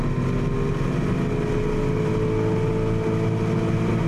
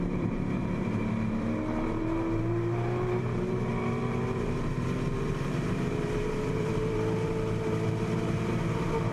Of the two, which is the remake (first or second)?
second